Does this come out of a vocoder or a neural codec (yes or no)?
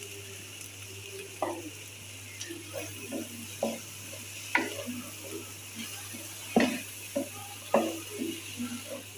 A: no